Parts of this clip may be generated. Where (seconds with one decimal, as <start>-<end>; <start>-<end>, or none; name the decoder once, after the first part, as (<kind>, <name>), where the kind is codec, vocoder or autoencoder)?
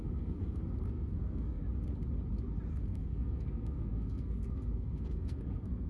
0.0-1.6 (codec, SNAC); 2.7-5.9